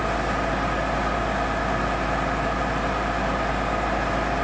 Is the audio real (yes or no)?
yes